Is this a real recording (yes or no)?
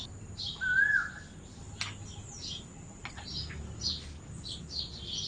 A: yes